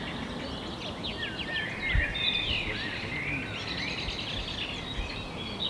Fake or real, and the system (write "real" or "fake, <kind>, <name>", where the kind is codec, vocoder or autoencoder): real